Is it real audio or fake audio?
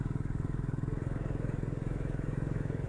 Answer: fake